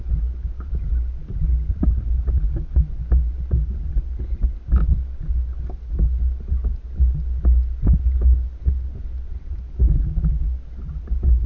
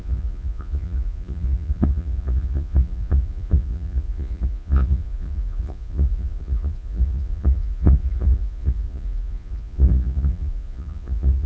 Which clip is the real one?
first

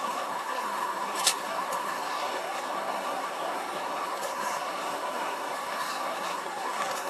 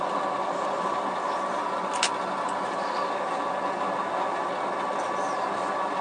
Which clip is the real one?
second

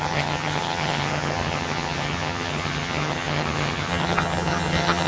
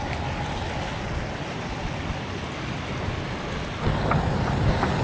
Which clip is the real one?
second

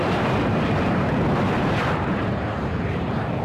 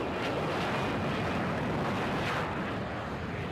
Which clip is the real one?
second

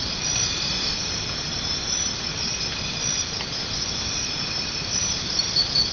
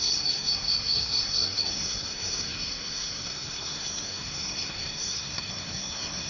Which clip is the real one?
first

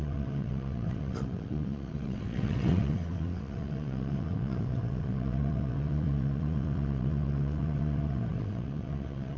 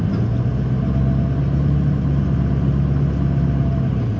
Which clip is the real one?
second